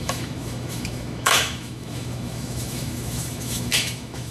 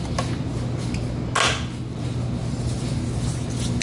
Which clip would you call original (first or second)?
second